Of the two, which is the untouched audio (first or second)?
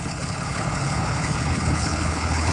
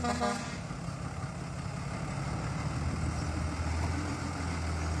second